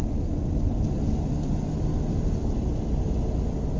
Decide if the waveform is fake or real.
real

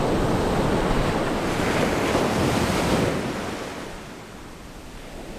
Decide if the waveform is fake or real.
real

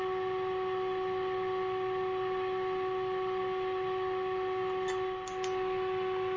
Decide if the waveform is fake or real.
real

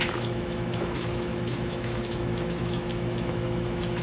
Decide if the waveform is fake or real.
fake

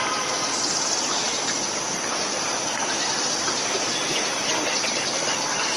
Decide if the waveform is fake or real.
real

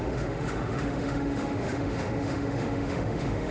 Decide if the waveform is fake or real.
fake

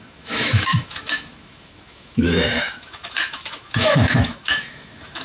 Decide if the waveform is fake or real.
fake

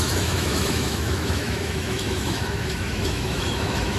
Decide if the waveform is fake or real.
fake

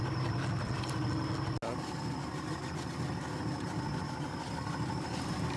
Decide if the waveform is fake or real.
real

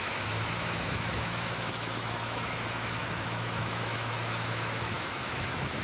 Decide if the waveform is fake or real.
fake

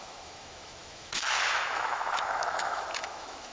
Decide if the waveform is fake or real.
fake